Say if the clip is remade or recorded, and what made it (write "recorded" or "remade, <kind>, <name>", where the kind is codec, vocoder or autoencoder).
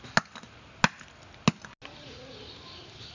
recorded